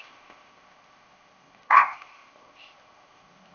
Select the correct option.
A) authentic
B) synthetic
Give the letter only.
B